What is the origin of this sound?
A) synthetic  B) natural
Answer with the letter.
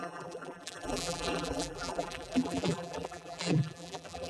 A